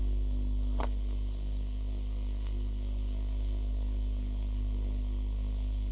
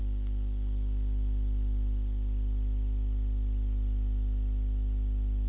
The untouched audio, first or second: second